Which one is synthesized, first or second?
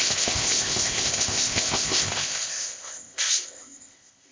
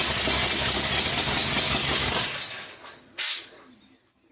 first